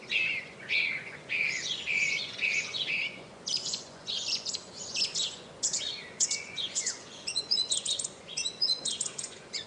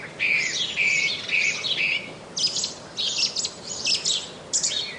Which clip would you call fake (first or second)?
first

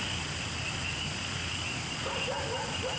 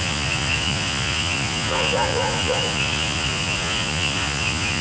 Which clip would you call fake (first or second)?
second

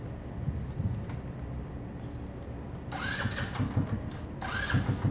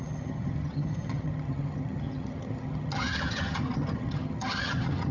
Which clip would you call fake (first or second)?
second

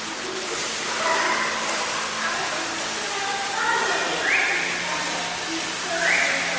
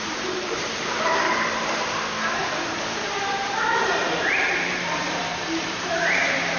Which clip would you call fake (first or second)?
second